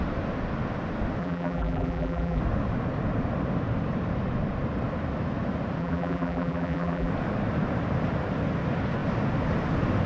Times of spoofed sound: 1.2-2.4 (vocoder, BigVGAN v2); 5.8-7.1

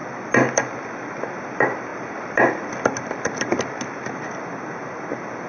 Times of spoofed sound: none

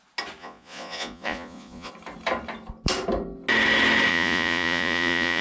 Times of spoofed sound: 0.4-1.9 (vocoder, Vocos); 4.1-5.4

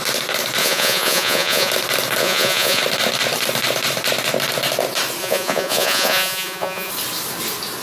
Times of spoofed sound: 0.6-1.7 (vocoder, Vocos); 2.2-2.8; 5.2-6.9

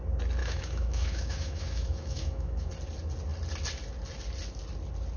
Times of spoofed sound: 0.4-2.7 (autoencoder, DAC-VAE)

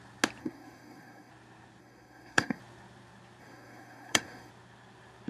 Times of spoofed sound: 0.4-1.3 (codec, SNAC); 1.8-2.6; 3.4-4.5